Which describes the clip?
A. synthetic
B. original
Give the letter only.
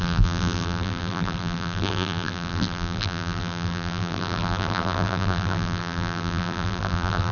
A